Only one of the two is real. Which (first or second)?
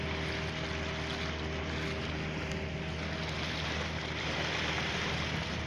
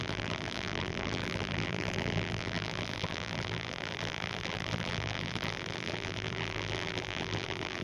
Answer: first